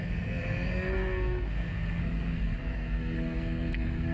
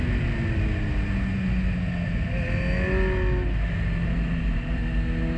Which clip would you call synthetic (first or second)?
first